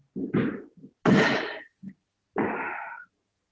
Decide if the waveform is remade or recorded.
recorded